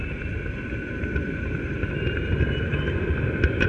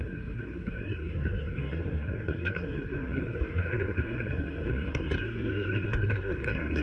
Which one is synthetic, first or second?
second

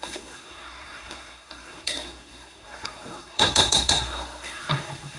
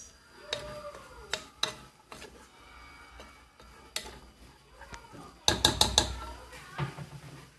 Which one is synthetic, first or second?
first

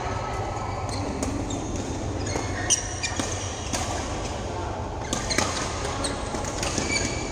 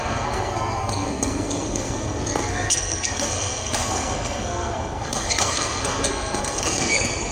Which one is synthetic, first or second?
second